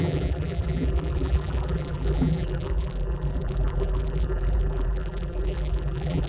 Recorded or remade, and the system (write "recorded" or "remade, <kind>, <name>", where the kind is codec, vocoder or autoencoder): remade, vocoder, BigVGAN v2